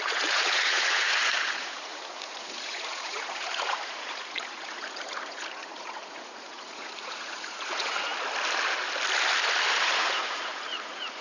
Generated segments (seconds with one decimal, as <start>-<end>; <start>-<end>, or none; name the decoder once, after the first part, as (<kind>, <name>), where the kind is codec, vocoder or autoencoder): 0.0-8.1 (vocoder, Vocos); 9.8-11.2